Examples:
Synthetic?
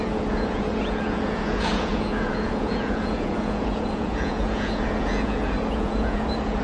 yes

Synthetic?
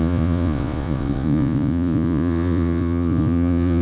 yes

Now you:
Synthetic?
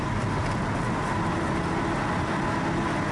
no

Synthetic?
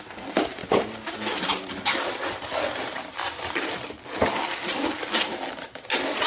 no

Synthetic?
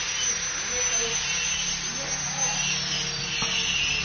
no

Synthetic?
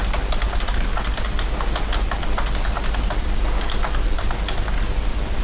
no